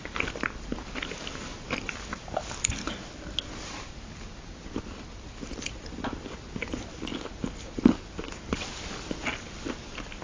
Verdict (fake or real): real